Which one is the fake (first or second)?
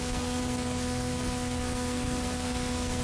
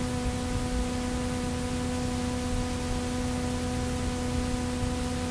first